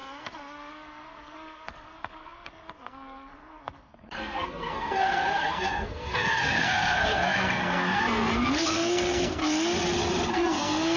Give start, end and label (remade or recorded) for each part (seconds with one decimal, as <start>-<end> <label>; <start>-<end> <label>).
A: 0.0-9.4 remade; 9.4-10.3 recorded; 10.3-11.0 remade